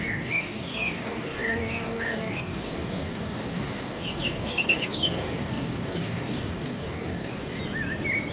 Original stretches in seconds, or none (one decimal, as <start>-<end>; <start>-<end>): 7.6-8.3